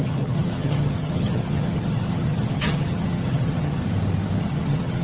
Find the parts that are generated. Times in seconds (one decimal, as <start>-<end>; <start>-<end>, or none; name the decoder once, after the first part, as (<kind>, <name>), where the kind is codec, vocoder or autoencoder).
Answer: 0.0-3.8 (vocoder, HiFi-GAN); 4.4-5.0